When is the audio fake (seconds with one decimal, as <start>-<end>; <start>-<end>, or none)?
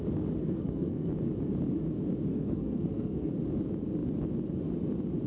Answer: 0.4-1.1; 2.3-3.3